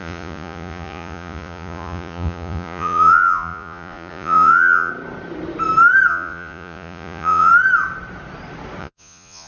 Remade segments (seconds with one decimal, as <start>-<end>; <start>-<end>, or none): 0.0-4.9; 6.1-7.5; 8.8-9.5